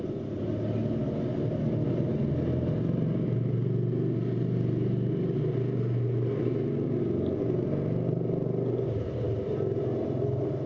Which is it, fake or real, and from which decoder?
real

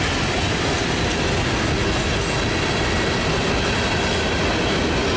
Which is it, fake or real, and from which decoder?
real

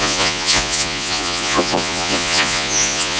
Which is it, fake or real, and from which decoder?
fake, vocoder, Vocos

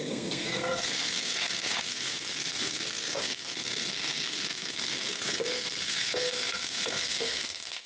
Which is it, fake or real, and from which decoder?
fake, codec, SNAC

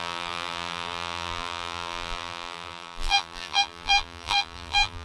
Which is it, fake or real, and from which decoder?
fake, vocoder, BigVGAN v2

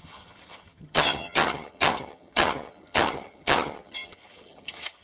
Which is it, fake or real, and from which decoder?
fake, vocoder, HiFi-GAN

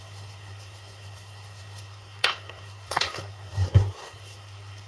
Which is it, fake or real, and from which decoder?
fake, codec, SNAC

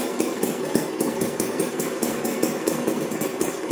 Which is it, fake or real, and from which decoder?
fake, codec, SNAC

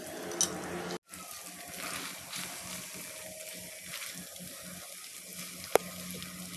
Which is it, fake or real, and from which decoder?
real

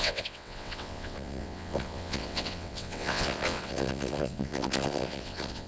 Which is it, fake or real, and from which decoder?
fake, vocoder, WaveNeXt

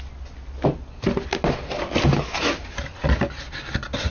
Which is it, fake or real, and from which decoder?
real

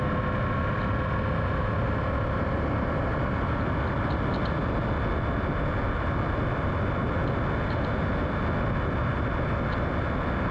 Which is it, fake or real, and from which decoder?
real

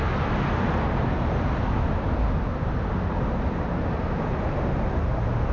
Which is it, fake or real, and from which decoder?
real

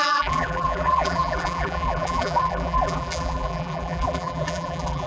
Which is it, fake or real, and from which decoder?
fake, vocoder, BigVGAN v2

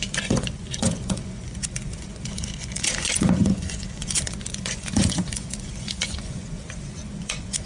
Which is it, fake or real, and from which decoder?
fake, vocoder, Vocos